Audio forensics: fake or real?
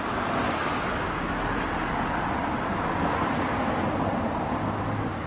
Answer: real